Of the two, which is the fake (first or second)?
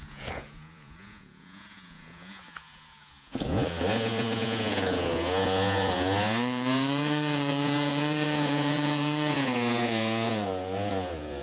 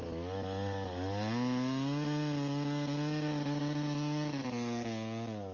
first